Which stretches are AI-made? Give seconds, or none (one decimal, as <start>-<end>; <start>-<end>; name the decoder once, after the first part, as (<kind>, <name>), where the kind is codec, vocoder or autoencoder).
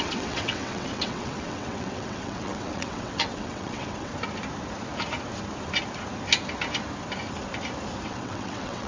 0.0-4.1 (vocoder, WaveNeXt); 8.0-8.9